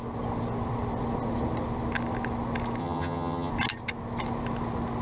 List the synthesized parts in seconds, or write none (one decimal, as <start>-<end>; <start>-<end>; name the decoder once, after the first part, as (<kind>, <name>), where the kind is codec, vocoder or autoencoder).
2.8-3.5 (vocoder, HiFi-GAN)